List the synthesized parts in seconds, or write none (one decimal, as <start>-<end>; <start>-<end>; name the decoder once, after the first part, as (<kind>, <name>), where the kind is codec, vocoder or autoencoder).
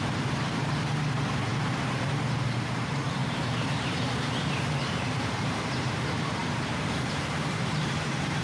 0.0-8.4 (vocoder, BigVGAN v2)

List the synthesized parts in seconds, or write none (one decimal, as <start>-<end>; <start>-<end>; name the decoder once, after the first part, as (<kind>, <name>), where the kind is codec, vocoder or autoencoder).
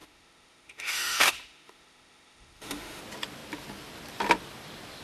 0.0-3.0 (autoencoder, DAC-VAE)